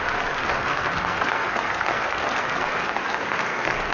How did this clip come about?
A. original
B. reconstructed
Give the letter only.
B